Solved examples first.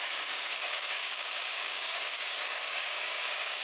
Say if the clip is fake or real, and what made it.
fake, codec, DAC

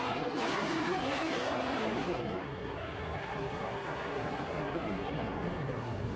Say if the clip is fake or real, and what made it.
fake, codec, SNAC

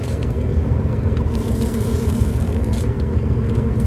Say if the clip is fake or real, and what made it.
fake, codec, SNAC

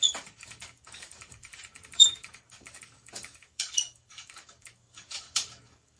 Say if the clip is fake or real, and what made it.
fake, codec, DAC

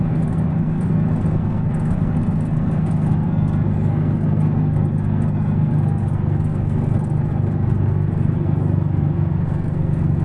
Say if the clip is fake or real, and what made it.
fake, codec, SNAC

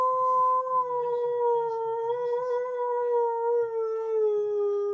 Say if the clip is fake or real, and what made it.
real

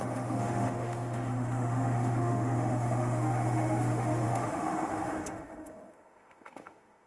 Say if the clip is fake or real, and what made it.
fake, autoencoder, DAC-VAE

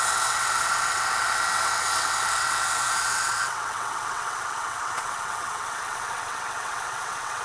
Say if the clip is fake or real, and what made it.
fake, vocoder, WaveNeXt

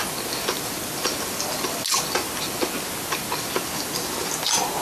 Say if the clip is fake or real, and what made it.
real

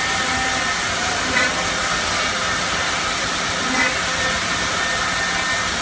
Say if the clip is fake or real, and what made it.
real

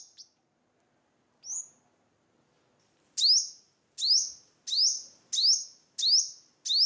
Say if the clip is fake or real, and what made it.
real